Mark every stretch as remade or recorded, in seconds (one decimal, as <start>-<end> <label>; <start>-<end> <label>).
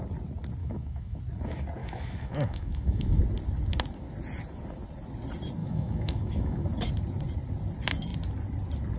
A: 0.0-0.6 recorded; 0.6-1.2 remade; 1.2-1.8 recorded; 1.8-3.2 remade; 3.2-5.6 recorded; 5.6-6.7 remade; 6.7-9.0 recorded